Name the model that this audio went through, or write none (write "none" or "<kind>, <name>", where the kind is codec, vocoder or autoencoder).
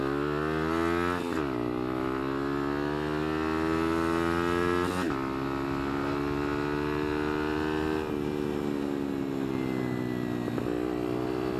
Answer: none